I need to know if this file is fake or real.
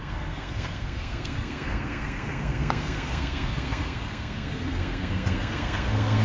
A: fake